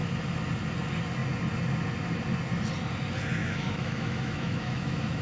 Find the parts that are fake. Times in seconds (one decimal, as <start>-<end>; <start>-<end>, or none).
3.4-5.2